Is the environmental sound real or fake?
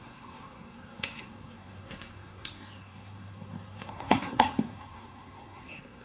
fake